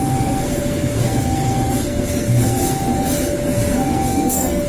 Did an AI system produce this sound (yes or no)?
yes